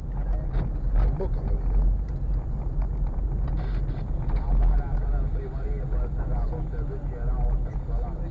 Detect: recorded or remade recorded